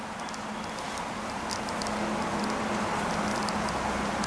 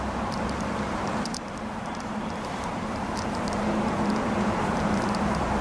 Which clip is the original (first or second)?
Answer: first